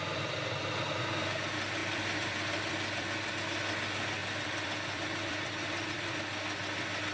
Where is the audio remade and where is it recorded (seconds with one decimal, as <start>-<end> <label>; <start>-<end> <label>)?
0.0-1.8 recorded; 1.8-3.3 remade; 3.3-4.2 recorded; 4.2-6.1 remade; 6.1-7.1 recorded